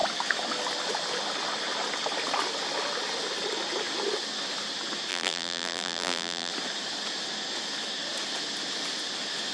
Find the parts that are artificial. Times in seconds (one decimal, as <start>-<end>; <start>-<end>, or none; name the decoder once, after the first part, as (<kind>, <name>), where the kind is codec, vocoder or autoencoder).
5.1-6.5 (vocoder, BigVGAN v2)